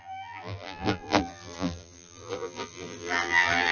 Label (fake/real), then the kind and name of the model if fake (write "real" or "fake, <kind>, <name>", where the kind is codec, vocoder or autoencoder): fake, vocoder, BigVGAN v2